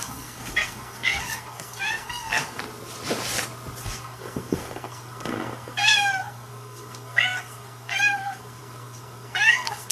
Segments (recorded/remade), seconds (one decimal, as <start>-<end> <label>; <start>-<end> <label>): 0.0-2.6 remade; 2.6-3.8 recorded; 3.8-9.9 remade